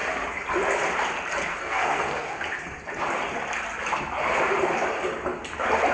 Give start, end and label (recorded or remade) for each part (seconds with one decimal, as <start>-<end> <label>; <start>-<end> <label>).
0.0-1.5 recorded; 1.5-2.4 remade; 2.4-5.9 recorded